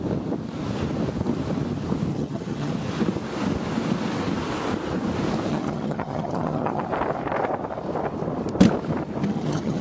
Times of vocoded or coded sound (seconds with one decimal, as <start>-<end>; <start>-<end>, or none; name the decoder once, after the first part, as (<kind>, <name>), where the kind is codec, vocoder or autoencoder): 2.1-2.7 (vocoder, HiFi-GAN); 5.5-6.8; 9.2-9.8